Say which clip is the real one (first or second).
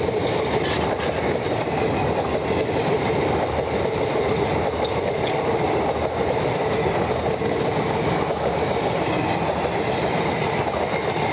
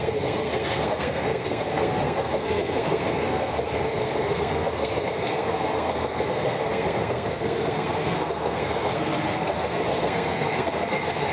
first